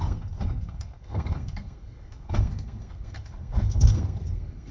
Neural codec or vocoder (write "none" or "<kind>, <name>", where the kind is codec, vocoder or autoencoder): codec, SNAC